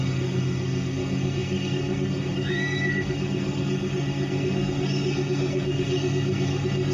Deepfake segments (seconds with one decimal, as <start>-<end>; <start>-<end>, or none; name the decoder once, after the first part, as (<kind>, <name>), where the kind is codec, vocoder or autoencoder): 0.0-6.9 (codec, SNAC)